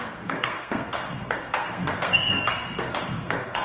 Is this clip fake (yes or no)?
yes